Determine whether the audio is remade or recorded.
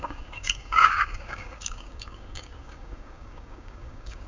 remade